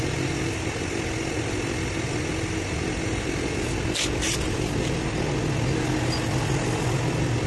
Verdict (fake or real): real